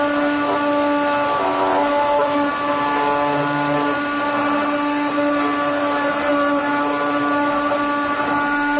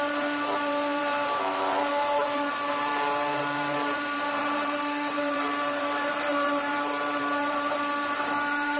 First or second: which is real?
first